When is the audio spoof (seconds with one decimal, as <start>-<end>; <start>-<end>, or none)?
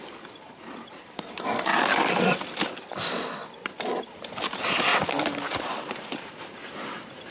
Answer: 0.0-1.7; 4.0-4.9; 5.6-7.3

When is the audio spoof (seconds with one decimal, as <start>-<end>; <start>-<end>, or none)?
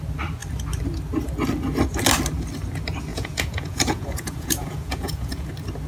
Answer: 3.1-5.5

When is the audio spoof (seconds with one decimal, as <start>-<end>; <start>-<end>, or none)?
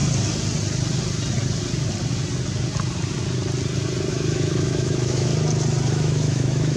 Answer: 4.1-5.3; 5.9-6.8